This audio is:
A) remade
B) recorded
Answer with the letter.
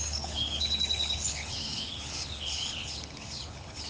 A